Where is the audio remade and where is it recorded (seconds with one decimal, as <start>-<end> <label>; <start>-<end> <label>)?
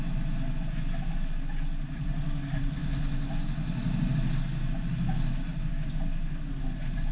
0.0-7.1 recorded